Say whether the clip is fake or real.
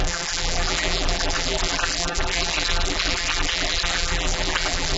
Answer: fake